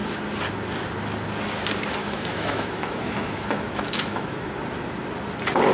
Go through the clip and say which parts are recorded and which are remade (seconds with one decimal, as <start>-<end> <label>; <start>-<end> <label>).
0.0-2.0 recorded; 2.0-4.5 remade; 4.5-5.7 recorded